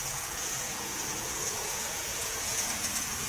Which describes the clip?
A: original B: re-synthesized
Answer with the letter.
B